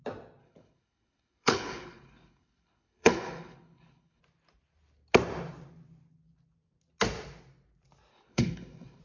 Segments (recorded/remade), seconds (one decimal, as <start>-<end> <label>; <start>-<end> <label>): 0.0-0.4 recorded; 0.4-4.2 remade; 4.2-8.1 recorded; 8.1-9.0 remade